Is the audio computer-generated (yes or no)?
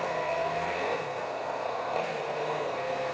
yes